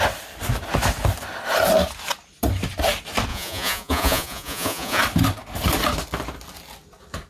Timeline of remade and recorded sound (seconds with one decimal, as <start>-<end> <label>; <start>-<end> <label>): 0.0-3.3 recorded; 3.3-5.0 remade; 5.0-7.3 recorded